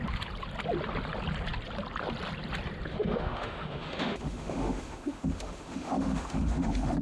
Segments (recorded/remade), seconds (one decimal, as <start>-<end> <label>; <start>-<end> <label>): 0.0-2.9 recorded; 2.9-7.0 remade